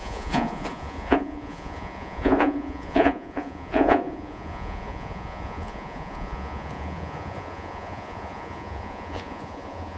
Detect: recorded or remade remade